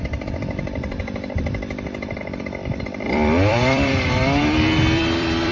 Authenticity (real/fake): fake